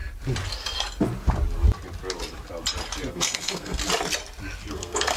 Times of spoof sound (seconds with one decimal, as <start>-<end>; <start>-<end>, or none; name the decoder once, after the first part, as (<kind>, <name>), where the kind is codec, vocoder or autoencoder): 3.1-3.8 (codec, SNAC); 4.7-5.2